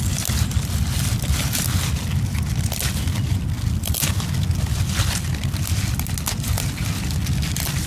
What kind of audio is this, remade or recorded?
recorded